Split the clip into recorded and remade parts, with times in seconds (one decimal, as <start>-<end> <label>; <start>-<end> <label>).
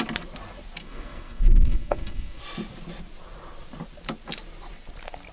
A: 0.0-0.8 recorded; 0.8-2.4 remade; 2.4-5.3 recorded